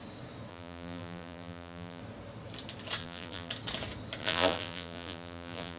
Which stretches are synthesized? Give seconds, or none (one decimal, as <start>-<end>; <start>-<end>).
0.5-2.0; 3.0-3.5; 4.2-5.8